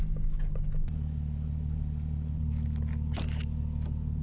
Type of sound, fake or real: real